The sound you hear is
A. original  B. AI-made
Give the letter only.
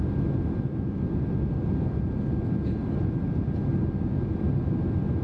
A